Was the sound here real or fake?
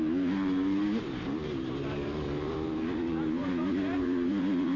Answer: fake